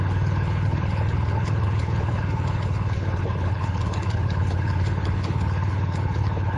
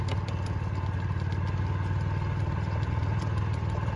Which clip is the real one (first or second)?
second